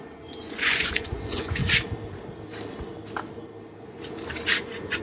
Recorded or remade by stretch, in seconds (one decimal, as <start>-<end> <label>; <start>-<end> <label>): 0.0-1.6 remade; 1.6-4.6 recorded; 4.6-5.0 remade